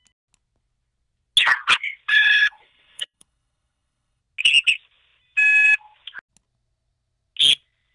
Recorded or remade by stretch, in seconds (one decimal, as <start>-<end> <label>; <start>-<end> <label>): 0.0-2.1 recorded; 2.1-4.2 remade; 4.2-7.9 recorded